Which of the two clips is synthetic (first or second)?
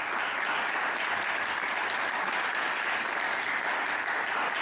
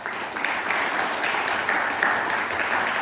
second